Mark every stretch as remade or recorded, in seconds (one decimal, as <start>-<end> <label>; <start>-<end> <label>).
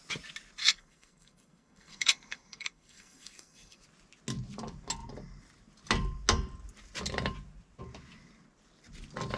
0.0-0.6 recorded; 0.6-3.8 remade; 3.8-9.4 recorded